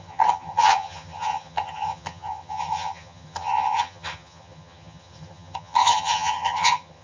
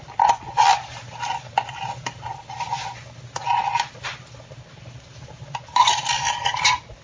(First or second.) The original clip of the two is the second